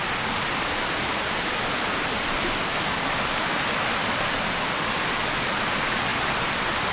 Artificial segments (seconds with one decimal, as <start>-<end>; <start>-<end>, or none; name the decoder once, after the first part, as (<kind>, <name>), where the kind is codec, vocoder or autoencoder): none